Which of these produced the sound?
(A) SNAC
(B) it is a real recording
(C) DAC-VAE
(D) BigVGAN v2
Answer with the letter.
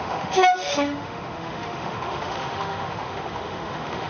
C